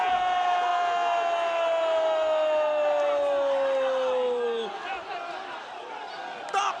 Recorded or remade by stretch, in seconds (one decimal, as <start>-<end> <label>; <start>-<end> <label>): 0.0-6.8 recorded